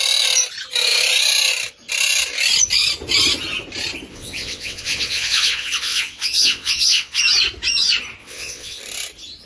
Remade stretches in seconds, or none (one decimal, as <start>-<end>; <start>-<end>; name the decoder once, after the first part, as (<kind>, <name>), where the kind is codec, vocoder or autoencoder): 4.1-7.2 (vocoder, WaveNeXt); 8.2-8.8